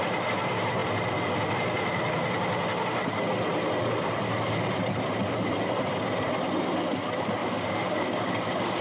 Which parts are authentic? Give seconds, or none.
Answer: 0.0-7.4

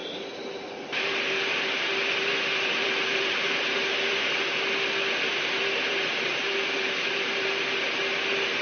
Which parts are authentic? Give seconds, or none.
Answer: 4.2-5.3; 7.5-8.6

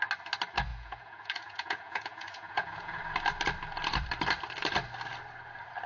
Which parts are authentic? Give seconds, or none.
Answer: 0.0-0.7; 3.0-5.9